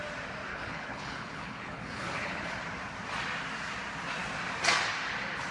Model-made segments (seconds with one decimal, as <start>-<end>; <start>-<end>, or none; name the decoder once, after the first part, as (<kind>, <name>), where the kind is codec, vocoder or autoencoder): 0.5-2.6 (codec, HILCodec)